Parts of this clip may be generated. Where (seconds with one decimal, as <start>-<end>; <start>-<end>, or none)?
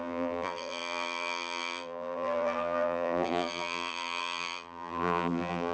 0.0-5.7